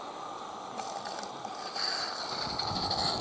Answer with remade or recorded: recorded